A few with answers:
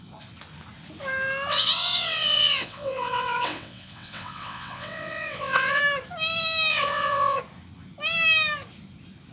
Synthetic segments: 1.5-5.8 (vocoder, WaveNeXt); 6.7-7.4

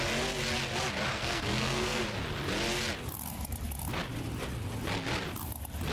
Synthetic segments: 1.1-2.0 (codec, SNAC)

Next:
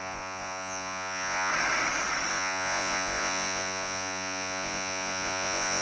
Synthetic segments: 0.0-1.5 (vocoder, Vocos); 2.3-5.8

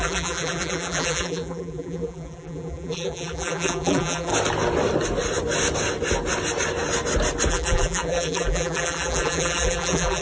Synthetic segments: 0.0-4.3 (vocoder, BigVGAN v2); 7.5-10.2

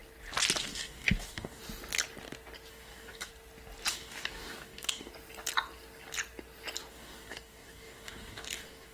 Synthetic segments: 0.6-1.6 (codec, DAC); 2.7-3.3; 3.9-5.1; 6.9-8.9